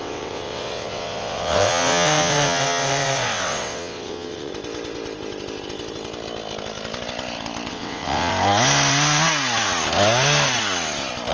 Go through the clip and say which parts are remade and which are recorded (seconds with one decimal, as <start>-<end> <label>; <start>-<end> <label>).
0.0-4.5 remade; 4.5-7.7 recorded; 7.7-8.3 remade; 8.3-11.3 recorded